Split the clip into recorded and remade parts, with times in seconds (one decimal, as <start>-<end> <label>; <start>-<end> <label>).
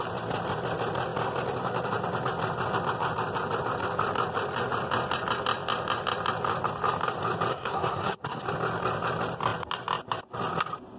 0.0-7.5 recorded; 7.5-8.4 remade; 8.4-11.0 recorded